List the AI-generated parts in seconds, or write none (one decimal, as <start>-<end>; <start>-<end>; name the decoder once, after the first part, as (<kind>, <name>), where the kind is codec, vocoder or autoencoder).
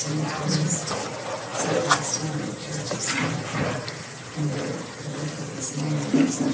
1.5-4.8 (vocoder, BigVGAN v2)